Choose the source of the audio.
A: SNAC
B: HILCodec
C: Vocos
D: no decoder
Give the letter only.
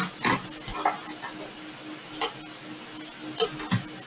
D